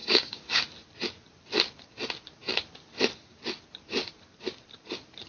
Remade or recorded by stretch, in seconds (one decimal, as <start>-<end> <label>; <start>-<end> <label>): 0.0-0.6 remade; 0.6-5.3 recorded